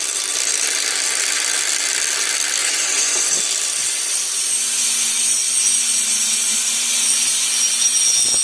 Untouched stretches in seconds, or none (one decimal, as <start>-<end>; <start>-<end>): 0.0-2.6; 3.4-4.6; 5.2-6.5; 7.3-8.4